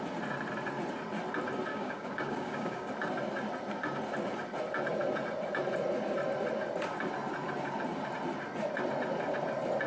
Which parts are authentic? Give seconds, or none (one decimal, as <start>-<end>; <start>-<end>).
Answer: 0.0-1.7; 2.9-9.9